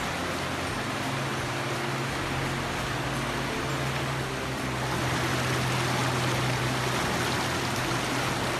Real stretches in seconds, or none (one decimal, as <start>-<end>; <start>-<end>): 0.0-8.6